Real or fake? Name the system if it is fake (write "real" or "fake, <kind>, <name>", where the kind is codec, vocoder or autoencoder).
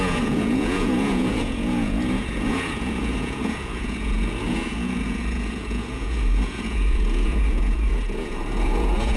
fake, vocoder, Vocos